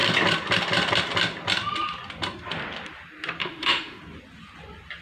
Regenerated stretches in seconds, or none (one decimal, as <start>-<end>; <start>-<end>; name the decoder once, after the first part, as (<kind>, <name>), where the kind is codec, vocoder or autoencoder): 3.4-4.0 (autoencoder, DAC-VAE)